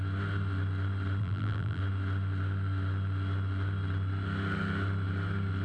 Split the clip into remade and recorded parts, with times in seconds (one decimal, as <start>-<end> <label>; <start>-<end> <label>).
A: 0.0-1.2 recorded; 1.2-1.8 remade; 1.8-5.6 recorded